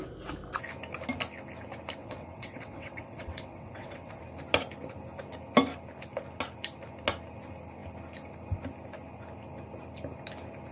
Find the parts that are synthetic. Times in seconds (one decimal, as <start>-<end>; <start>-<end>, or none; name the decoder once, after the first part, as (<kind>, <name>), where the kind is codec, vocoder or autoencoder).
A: 2.0-4.2 (vocoder, WaveNeXt)

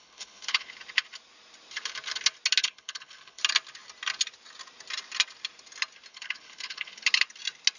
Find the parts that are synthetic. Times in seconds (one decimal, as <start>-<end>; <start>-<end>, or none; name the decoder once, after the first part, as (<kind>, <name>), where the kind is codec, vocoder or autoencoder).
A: 0.0-0.7 (codec, HILCodec); 2.6-3.4; 6.1-7.0